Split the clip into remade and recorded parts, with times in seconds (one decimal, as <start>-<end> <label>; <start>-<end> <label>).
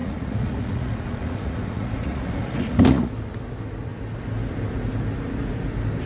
0.0-3.1 remade; 3.1-6.1 recorded